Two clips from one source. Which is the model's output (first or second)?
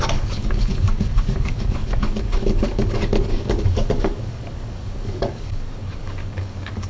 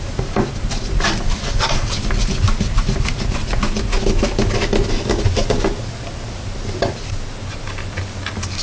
first